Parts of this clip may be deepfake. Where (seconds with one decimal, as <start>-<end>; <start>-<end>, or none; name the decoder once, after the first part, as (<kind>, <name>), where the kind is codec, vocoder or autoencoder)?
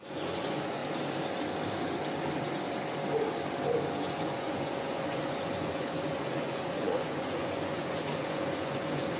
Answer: 0.0-0.8 (vocoder, Vocos); 3.9-9.2